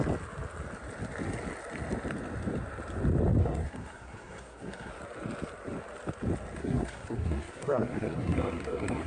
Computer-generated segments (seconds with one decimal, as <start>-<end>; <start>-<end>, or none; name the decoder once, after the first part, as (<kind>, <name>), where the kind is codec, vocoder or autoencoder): 3.4-4.9 (codec, SNAC); 6.6-9.1